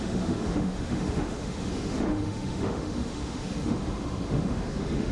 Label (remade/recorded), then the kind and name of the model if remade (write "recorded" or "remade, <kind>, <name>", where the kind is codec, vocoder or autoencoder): remade, autoencoder, DAC-VAE